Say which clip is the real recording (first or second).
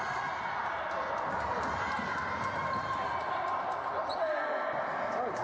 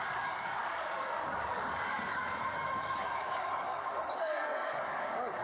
first